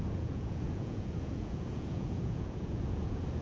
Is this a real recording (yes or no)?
no